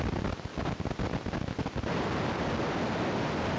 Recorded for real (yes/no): yes